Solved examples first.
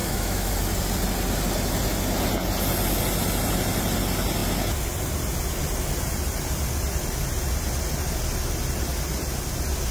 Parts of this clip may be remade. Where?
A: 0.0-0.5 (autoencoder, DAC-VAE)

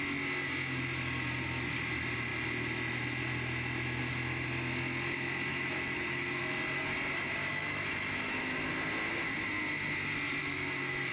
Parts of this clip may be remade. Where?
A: 5.5-6.4 (autoencoder, DAC-VAE); 7.5-8.7; 10.4-11.1